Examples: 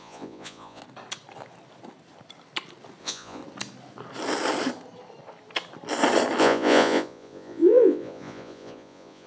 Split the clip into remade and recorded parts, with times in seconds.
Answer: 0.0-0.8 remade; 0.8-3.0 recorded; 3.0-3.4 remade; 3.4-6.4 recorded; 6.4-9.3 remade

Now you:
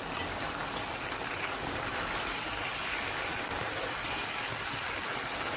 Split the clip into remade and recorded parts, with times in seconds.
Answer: 0.0-5.6 recorded

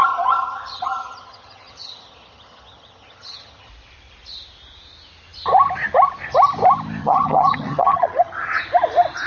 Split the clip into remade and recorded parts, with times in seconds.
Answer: 0.0-3.7 remade; 3.7-7.0 recorded; 7.0-8.6 remade; 8.6-9.3 recorded

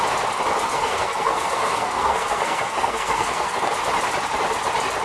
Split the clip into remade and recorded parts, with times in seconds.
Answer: 0.0-0.7 recorded; 0.7-3.7 remade; 3.7-5.0 recorded

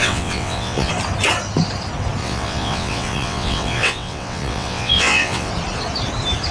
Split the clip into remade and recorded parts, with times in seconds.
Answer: 0.0-0.9 remade; 0.9-2.2 recorded; 2.2-5.5 remade; 5.5-6.5 recorded

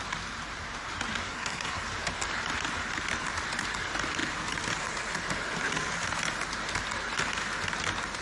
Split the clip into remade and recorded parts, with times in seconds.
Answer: 0.0-1.2 recorded; 1.2-1.8 remade; 1.8-8.2 recorded

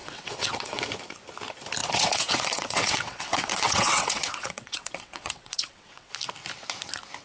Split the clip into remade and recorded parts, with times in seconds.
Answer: 0.0-0.8 remade; 0.8-1.8 recorded; 1.8-6.1 remade; 6.1-7.2 recorded

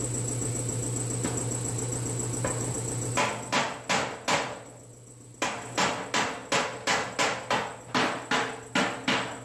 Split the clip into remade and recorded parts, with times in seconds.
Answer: 0.0-9.4 recorded